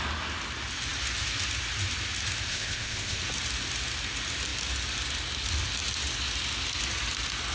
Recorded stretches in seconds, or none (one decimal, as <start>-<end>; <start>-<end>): 0.0-2.5; 3.2-7.5